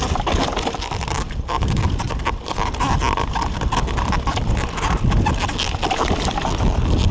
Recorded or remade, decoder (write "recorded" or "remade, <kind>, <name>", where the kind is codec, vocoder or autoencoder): recorded